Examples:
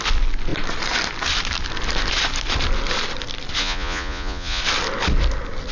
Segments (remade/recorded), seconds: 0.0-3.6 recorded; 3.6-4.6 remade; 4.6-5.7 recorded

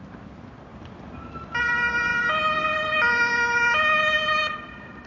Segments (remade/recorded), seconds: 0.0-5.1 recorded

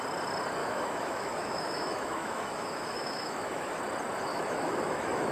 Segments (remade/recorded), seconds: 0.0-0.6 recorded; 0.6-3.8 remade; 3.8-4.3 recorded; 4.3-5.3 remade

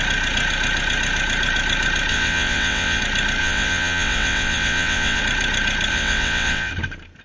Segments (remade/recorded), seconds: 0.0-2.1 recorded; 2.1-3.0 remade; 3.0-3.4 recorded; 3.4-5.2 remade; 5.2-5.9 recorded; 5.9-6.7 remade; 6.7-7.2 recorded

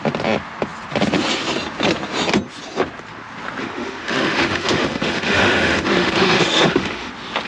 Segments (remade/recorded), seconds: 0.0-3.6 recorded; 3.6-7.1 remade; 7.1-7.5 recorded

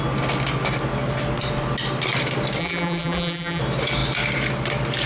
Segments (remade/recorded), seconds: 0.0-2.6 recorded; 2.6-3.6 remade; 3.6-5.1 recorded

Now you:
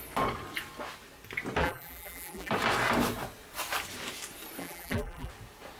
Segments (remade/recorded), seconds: 0.0-1.6 recorded; 1.6-2.5 remade; 2.5-4.6 recorded; 4.6-5.3 remade; 5.3-5.8 recorded